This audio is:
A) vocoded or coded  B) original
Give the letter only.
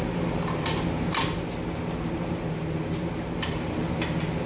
B